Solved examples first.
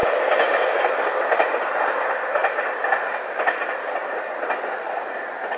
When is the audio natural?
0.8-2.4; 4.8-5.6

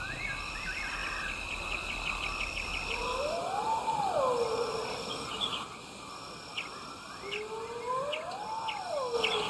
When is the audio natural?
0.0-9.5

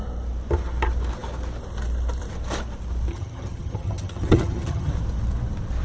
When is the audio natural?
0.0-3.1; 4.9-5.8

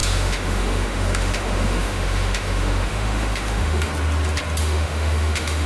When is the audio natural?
3.9-4.6

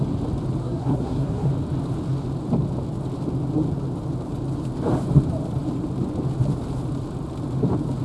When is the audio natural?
0.0-0.6; 1.5-8.0